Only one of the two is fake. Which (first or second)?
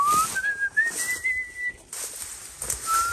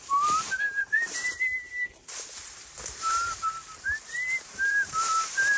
second